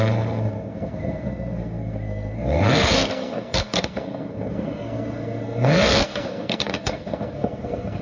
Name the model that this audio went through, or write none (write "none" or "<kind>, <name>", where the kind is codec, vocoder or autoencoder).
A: codec, SNAC